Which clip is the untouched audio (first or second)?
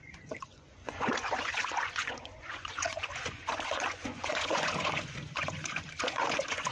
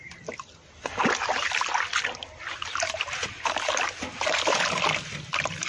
second